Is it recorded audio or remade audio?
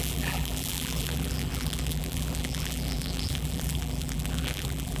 remade